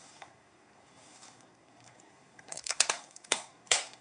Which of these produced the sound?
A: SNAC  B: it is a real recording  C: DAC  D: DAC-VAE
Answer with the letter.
A